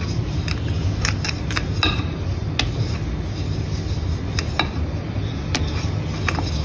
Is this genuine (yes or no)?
yes